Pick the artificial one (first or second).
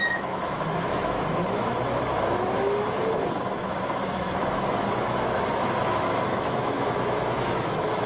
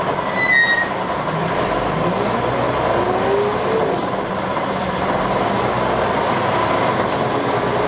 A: first